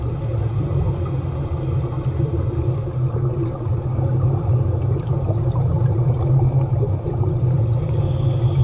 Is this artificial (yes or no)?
no